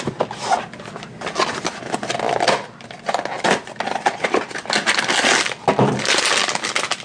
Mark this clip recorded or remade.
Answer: recorded